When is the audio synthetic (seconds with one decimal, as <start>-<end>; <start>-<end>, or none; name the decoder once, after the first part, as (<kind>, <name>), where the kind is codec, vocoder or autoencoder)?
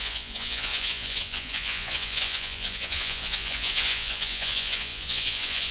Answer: 0.0-5.7 (vocoder, Vocos)